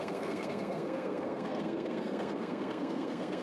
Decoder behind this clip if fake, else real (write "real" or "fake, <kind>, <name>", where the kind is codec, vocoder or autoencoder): fake, codec, SNAC